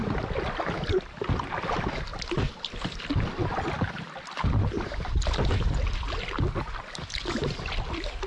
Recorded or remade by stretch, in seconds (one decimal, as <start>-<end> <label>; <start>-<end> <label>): 0.0-2.1 recorded; 2.1-2.9 remade; 2.9-8.3 recorded